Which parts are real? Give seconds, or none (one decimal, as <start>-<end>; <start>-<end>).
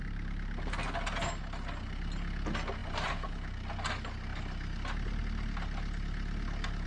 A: 0.0-2.8; 3.3-6.9